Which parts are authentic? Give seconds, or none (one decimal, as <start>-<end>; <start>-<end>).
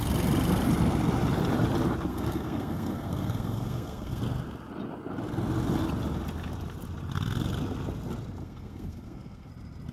0.0-2.1; 4.2-8.4; 9.5-9.9